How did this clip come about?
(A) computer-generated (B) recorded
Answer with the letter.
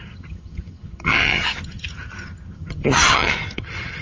A